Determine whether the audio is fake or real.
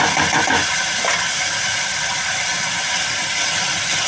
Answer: fake